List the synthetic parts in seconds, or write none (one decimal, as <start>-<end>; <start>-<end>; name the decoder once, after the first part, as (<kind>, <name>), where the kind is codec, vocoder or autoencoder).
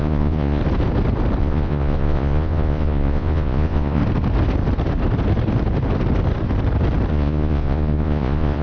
0.0-0.6 (vocoder, Vocos); 1.4-4.0; 7.1-8.6